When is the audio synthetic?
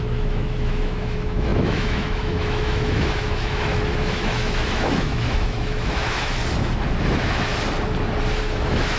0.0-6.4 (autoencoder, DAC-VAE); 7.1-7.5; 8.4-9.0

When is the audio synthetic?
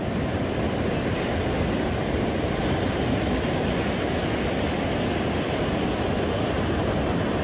none